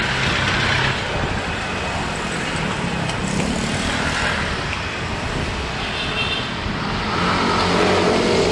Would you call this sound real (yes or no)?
yes